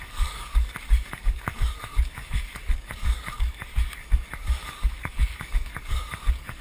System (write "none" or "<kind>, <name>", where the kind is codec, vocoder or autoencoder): codec, DAC